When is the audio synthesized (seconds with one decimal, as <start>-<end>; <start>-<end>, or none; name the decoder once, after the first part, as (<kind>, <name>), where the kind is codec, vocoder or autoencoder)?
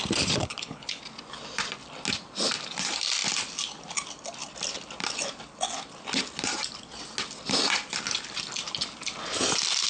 0.4-1.0 (codec, HILCodec)